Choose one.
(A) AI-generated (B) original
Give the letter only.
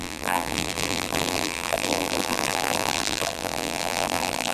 A